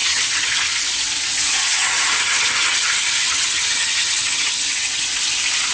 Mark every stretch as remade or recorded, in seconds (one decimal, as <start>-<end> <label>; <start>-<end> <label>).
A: 0.0-0.6 remade; 0.6-1.6 recorded; 1.6-5.0 remade; 5.0-5.7 recorded